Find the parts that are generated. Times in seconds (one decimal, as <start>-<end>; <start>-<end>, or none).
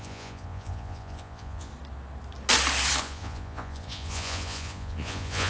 0.0-1.7; 3.0-5.5